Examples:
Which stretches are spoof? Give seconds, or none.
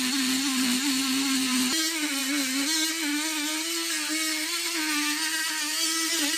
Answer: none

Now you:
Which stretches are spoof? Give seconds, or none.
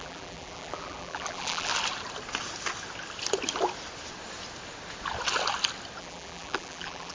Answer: 0.0-1.7 (vocoder, BigVGAN v2); 6.0-7.1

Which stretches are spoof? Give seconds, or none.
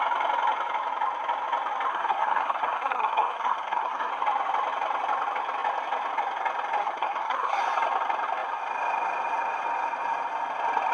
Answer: 1.9-4.1 (codec, SNAC); 6.8-7.6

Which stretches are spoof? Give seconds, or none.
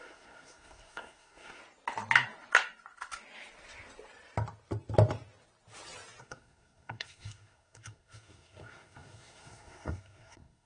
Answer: 0.0-1.6 (codec, SNAC); 6.2-10.7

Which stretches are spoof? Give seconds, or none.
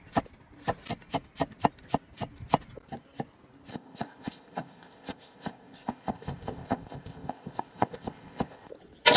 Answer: 3.7-8.7 (codec, ZipCodec)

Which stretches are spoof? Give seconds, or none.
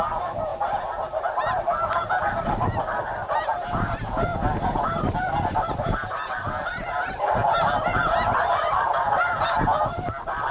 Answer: none